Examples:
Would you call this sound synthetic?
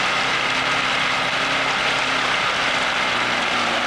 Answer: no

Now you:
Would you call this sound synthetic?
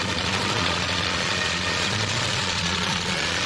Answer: yes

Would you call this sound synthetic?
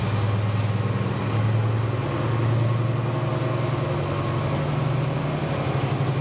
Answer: no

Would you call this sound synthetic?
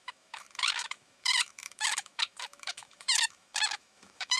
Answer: yes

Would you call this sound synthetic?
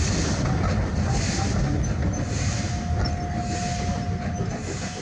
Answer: no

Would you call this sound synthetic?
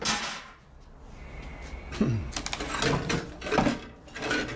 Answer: no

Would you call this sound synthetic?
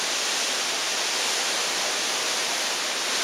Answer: no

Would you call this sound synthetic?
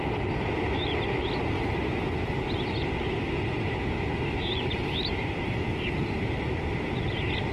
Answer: no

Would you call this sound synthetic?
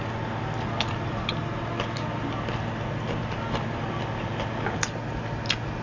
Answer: no